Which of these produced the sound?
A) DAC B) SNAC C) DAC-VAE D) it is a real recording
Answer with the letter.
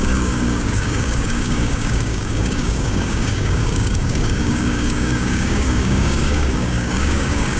A